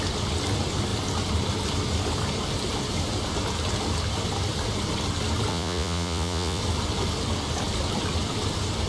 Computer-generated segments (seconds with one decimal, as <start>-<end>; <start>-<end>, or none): 5.5-6.6